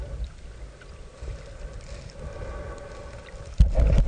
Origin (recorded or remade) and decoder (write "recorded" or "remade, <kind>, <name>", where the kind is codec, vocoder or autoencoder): recorded